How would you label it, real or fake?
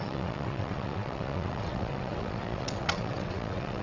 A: fake